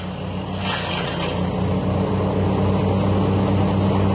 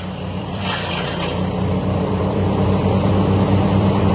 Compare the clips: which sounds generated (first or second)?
second